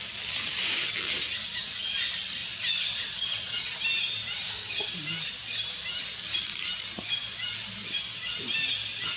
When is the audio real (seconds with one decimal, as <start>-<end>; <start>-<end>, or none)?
0.0-9.2